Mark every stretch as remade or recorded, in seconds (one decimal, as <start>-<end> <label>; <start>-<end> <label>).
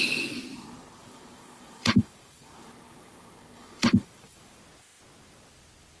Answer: 0.0-1.0 recorded; 1.0-4.6 remade; 4.6-6.0 recorded